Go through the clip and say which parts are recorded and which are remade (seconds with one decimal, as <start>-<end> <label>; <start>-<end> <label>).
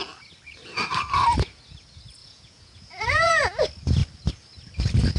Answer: 0.0-2.2 recorded; 2.2-3.6 remade; 3.6-5.2 recorded